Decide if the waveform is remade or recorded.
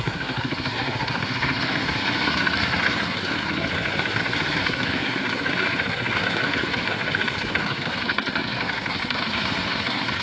remade